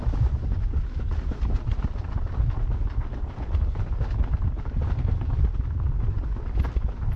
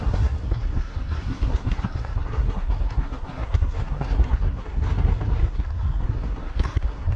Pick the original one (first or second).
first